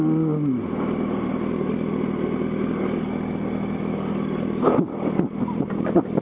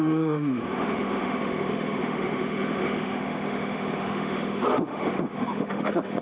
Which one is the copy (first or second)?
second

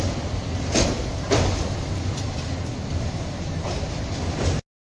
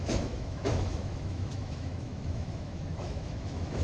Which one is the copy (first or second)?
second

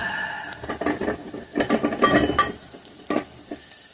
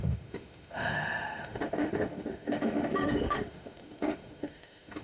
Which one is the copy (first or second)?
second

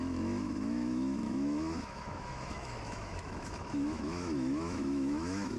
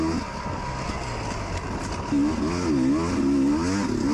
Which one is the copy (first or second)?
first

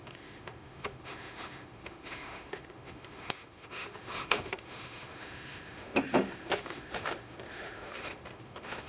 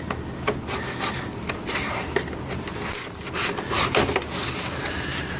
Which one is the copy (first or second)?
first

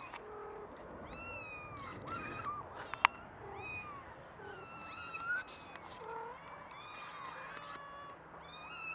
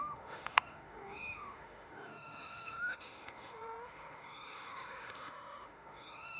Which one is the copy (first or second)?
second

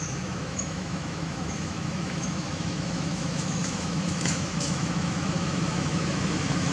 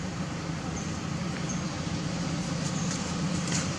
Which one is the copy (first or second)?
first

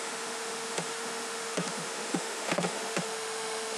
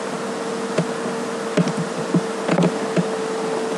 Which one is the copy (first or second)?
first